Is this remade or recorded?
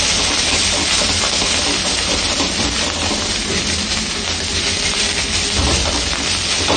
recorded